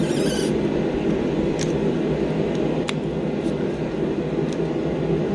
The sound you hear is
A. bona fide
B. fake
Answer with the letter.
A